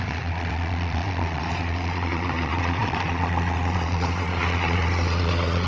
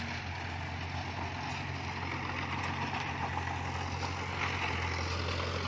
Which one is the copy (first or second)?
first